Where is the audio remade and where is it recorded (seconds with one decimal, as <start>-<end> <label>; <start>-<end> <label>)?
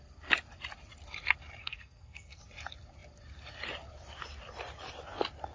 0.0-1.6 recorded; 1.6-2.4 remade; 2.4-5.5 recorded